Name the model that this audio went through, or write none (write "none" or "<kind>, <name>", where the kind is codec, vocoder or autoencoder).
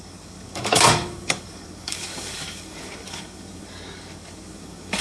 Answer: codec, DAC